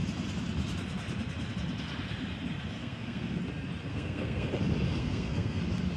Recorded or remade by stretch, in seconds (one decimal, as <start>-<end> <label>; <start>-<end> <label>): 0.0-2.8 recorded; 2.8-3.4 remade; 3.4-3.9 recorded; 3.9-4.5 remade; 4.5-5.0 recorded; 5.0-5.6 remade; 5.6-6.0 recorded